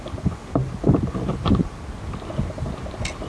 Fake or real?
real